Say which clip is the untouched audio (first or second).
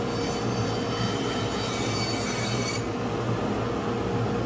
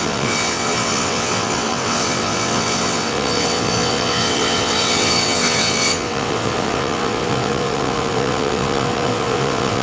first